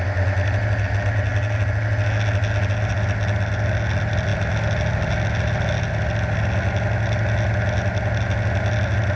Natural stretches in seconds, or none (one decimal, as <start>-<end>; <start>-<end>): 0.0-9.2